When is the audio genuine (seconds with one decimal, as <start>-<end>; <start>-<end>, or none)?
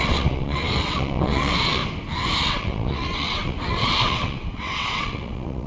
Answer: 1.8-2.4